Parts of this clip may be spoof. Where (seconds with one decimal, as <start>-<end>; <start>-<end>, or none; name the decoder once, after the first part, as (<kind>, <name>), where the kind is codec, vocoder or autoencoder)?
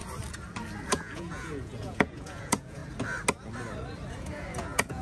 0.9-2.8 (vocoder, Vocos); 4.1-5.0